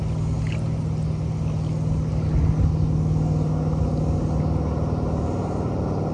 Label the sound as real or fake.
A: real